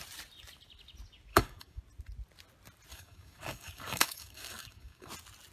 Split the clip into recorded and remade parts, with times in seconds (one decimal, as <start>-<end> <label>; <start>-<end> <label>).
0.0-1.3 recorded; 1.3-1.8 remade; 1.8-2.9 recorded; 2.9-5.1 remade; 5.1-5.5 recorded